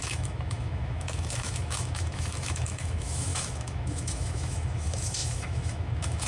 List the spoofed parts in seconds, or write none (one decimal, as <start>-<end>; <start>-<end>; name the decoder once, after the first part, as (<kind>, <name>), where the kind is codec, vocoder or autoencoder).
0.0-6.3 (autoencoder, DAC-VAE)